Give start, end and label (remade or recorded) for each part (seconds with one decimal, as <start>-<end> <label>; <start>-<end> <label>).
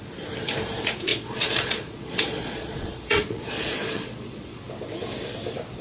0.0-1.1 recorded; 1.1-4.6 remade; 4.6-5.8 recorded